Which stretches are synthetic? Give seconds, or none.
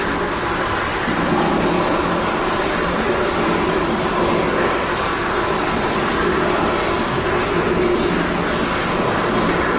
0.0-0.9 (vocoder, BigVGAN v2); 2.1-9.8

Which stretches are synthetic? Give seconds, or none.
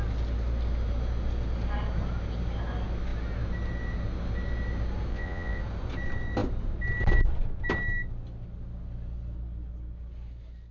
5.1-5.6 (vocoder, Vocos)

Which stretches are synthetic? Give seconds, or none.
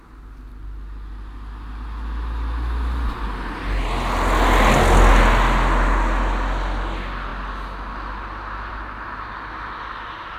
none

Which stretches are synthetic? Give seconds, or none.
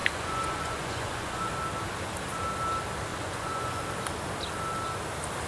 0.0-1.5 (vocoder, Vocos); 3.1-3.8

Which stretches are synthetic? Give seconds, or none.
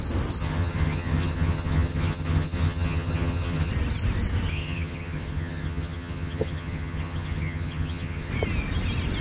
0.4-3.7 (vocoder, HiFi-GAN); 4.5-8.3